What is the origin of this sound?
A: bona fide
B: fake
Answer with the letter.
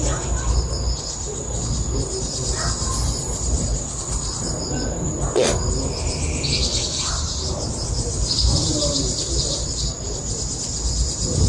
A